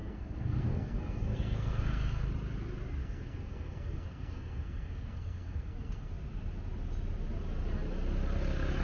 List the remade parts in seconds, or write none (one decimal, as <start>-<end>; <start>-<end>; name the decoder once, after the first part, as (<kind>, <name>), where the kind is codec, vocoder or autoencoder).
0.0-2.3 (codec, SNAC); 3.0-6.1

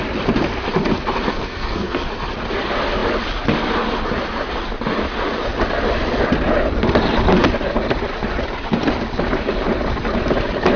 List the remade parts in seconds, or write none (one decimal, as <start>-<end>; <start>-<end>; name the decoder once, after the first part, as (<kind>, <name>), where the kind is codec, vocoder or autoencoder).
1.3-2.1 (codec, SNAC)

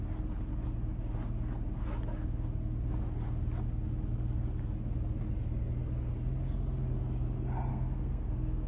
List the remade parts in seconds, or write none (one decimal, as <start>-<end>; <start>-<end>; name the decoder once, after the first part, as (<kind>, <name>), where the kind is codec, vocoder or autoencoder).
7.7-8.7 (codec, SNAC)

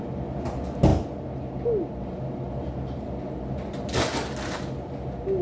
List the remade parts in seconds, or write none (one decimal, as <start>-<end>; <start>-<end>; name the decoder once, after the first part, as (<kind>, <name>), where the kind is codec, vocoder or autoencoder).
none

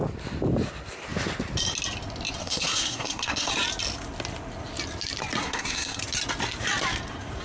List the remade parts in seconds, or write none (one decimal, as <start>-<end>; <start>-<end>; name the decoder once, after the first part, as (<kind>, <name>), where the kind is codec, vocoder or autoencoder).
2.4-3.5 (codec, SNAC); 5.4-6.0